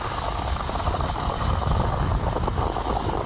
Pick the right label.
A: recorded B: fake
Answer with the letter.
A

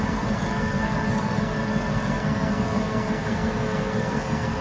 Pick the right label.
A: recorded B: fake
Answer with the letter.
B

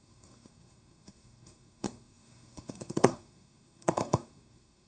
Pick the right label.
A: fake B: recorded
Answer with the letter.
A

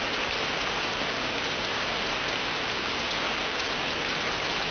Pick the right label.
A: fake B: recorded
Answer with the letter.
B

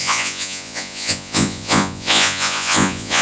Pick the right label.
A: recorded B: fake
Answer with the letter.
B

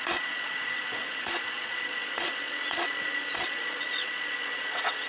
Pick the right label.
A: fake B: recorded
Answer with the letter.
A